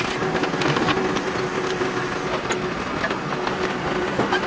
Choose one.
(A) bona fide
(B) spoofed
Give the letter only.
A